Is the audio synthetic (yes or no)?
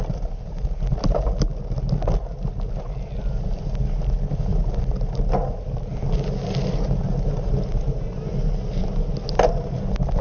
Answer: no